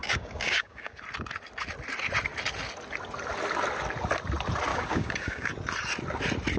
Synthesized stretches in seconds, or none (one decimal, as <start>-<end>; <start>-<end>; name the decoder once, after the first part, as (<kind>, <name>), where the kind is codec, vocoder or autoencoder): 0.0-1.0 (codec, DAC); 4.7-5.5